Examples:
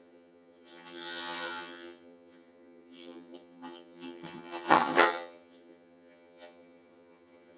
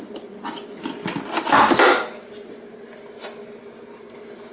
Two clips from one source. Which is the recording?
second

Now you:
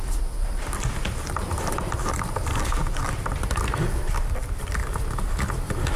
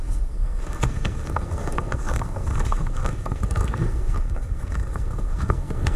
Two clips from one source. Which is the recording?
first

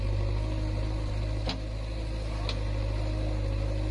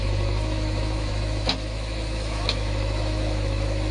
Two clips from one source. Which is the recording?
first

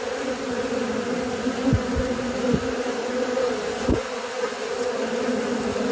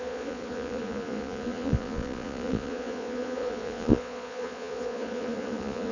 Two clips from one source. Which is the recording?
first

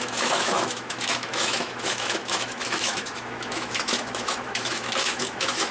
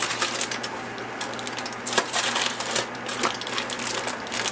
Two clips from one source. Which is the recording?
second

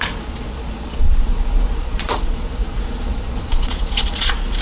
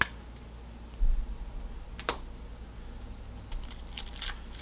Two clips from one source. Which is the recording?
second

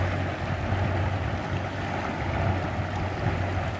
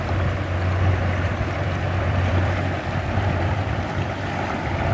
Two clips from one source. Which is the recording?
first